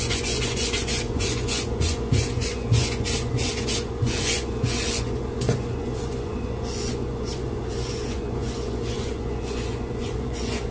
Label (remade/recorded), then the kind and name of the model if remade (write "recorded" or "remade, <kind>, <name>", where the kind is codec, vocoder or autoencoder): remade, vocoder, Vocos